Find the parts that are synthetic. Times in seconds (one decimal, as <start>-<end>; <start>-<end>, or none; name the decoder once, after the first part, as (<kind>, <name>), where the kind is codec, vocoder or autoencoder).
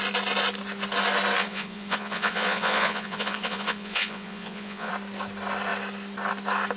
1.4-4.9 (vocoder, Vocos)